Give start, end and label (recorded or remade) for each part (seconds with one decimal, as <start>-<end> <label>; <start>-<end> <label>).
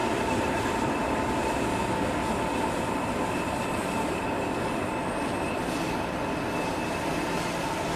0.0-0.6 remade; 0.6-8.0 recorded